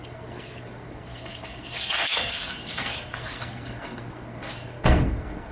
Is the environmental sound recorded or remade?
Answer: remade